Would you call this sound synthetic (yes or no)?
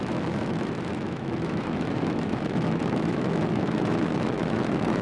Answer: yes